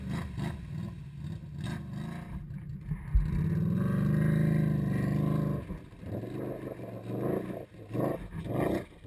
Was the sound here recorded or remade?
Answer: recorded